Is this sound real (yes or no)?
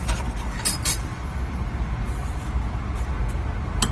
yes